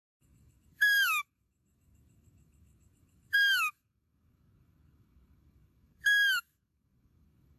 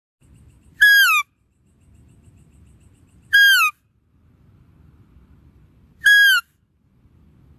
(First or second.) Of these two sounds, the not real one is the first